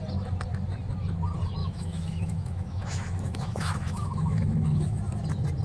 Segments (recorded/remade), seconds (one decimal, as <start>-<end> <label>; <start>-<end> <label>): 0.0-1.6 recorded; 1.6-5.0 remade; 5.0-5.6 recorded